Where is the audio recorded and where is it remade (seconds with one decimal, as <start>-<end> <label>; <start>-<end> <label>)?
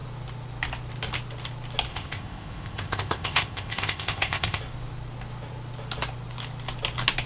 0.0-1.9 recorded; 1.9-4.6 remade; 4.6-7.3 recorded